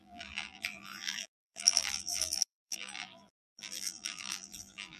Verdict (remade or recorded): remade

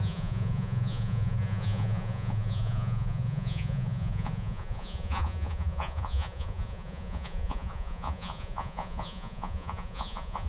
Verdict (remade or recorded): remade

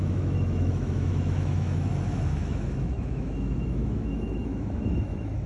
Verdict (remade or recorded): remade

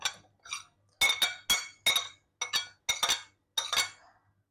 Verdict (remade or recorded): recorded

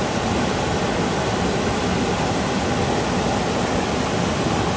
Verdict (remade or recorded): recorded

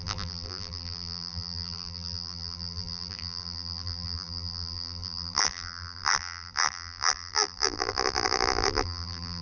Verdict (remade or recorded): remade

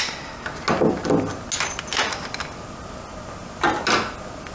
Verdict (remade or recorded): recorded